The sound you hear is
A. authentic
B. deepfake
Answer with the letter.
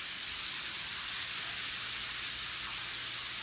A